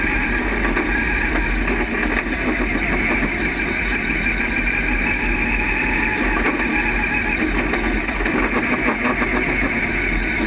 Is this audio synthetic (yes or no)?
no